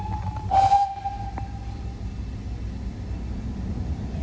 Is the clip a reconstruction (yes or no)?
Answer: no